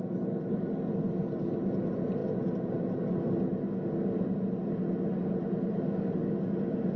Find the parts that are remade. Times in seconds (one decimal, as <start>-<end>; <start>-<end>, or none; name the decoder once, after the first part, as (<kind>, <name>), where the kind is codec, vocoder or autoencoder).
none